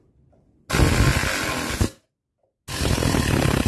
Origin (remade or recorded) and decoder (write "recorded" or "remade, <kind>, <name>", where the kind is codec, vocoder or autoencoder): recorded